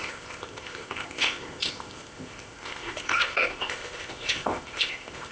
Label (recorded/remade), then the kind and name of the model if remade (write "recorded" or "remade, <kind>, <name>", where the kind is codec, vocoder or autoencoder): remade, codec, ZipCodec